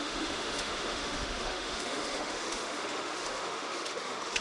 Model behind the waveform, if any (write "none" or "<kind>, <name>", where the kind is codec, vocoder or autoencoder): autoencoder, DAC-VAE